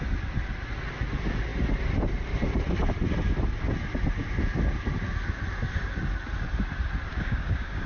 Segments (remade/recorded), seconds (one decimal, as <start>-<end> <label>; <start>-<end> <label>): 0.0-7.1 recorded; 7.1-7.9 remade